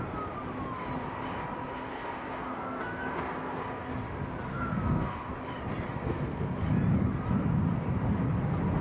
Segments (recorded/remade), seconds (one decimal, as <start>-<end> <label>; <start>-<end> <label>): 0.0-1.7 recorded; 1.7-3.9 remade; 3.9-4.5 recorded; 4.5-5.3 remade; 5.3-5.9 recorded; 5.9-6.6 remade; 6.6-8.8 recorded